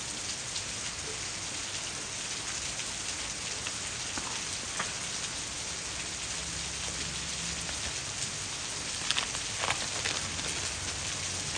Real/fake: real